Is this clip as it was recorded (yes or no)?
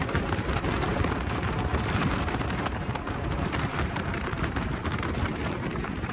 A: no